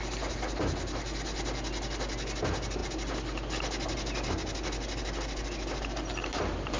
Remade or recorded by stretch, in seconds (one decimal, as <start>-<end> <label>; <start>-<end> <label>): 0.0-6.8 recorded

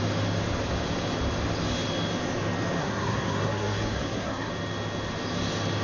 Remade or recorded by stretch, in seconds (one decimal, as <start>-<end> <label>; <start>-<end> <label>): 0.0-2.8 recorded; 2.8-4.5 remade; 4.5-5.8 recorded

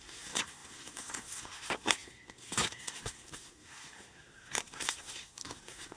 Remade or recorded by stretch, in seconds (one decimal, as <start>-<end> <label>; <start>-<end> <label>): 0.0-6.0 remade

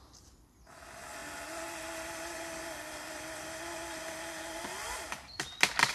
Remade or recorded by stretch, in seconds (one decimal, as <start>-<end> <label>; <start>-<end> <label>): 0.0-5.9 recorded

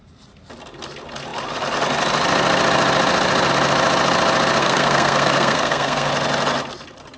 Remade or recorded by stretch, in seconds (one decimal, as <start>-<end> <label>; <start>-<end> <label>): 0.0-4.6 recorded; 4.6-6.1 remade; 6.1-7.2 recorded

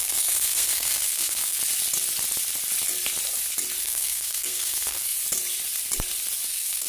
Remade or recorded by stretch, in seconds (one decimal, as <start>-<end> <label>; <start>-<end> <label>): 0.0-1.6 remade; 1.6-3.8 recorded; 3.8-5.1 remade; 5.1-6.5 recorded; 6.5-6.9 remade